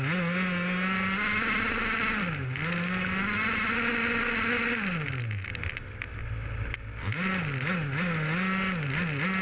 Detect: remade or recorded recorded